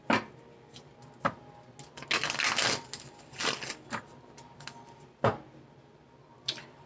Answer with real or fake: real